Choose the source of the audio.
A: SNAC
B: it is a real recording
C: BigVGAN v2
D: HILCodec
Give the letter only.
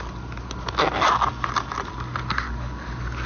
B